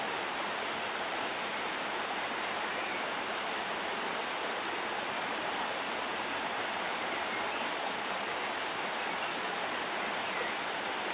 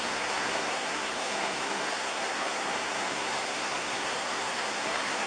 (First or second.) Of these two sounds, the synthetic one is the second